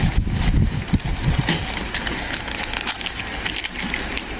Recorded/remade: recorded